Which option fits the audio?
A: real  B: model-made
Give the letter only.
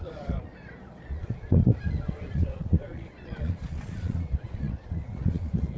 B